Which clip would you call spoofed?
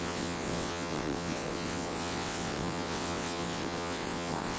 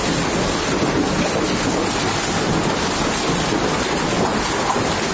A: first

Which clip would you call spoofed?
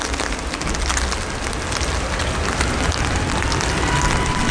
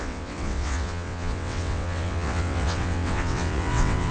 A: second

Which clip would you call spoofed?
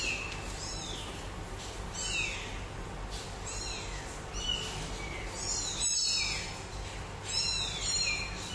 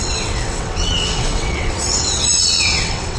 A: second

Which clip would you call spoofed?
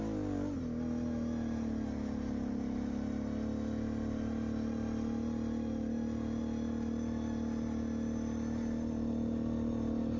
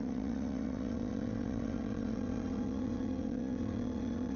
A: second